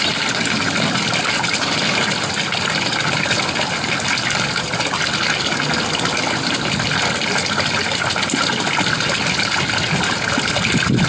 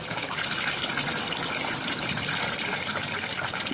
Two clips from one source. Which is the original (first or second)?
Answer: first